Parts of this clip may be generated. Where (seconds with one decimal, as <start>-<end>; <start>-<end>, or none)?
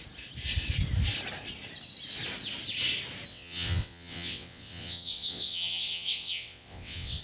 3.3-7.2